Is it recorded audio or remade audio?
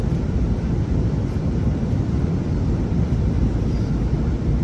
remade